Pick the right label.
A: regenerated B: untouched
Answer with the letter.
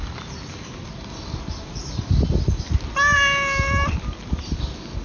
B